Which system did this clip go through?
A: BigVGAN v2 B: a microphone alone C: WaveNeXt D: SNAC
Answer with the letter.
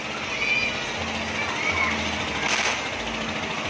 B